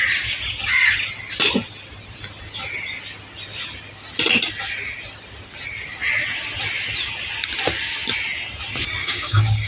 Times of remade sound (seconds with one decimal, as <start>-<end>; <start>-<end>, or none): 9.0-9.7